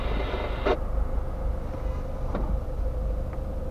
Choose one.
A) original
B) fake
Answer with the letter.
A